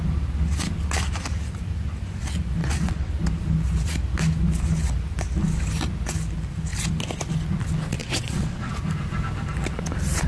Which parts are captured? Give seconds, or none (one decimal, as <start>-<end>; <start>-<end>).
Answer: 0.0-2.6; 3.1-8.0; 8.7-10.3